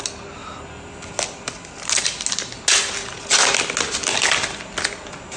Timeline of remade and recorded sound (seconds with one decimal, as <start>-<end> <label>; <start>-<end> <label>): 0.0-5.4 recorded